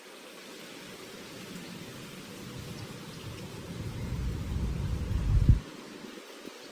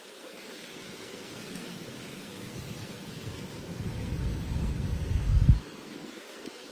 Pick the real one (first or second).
first